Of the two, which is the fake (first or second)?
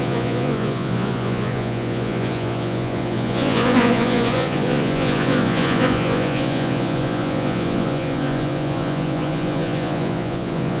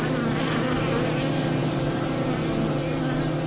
first